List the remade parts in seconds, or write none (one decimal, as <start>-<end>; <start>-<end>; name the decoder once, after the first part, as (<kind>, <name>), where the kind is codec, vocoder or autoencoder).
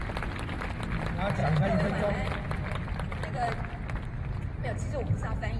1.4-3.7 (vocoder, BigVGAN v2)